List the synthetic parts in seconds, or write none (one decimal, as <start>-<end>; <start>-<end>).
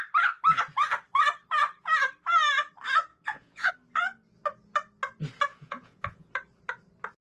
3.1-3.7; 5.5-6.3